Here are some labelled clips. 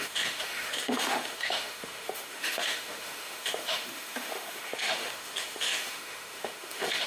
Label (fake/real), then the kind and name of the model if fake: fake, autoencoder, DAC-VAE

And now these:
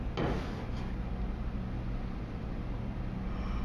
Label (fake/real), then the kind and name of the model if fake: real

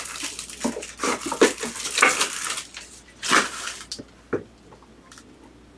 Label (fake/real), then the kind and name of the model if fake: real